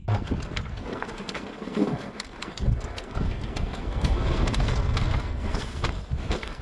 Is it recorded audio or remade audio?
remade